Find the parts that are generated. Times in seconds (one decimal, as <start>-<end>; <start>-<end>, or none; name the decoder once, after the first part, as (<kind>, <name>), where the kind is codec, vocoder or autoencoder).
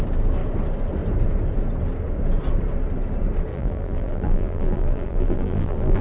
3.5-6.0 (vocoder, BigVGAN v2)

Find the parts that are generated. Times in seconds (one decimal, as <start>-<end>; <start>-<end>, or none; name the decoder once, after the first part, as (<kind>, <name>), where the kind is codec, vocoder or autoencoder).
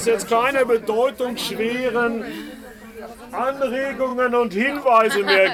none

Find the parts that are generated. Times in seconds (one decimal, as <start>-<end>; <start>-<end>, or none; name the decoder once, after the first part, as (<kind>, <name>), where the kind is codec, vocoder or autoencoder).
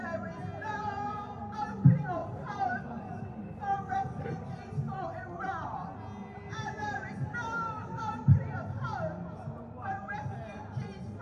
2.2-3.4 (vocoder, BigVGAN v2); 6.2-7.9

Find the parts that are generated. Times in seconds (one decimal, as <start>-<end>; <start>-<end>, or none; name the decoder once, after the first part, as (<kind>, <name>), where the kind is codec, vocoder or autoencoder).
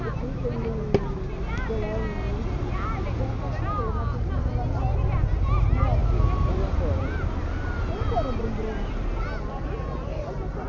none